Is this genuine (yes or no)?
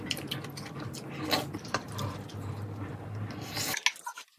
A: yes